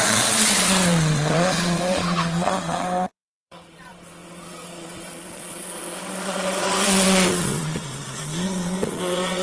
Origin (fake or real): fake